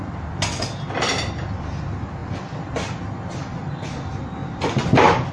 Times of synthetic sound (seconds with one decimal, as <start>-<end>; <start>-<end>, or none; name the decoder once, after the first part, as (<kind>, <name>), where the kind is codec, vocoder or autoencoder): none